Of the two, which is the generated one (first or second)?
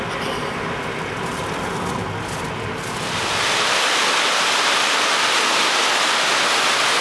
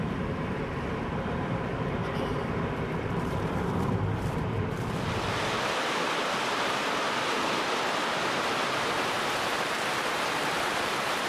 second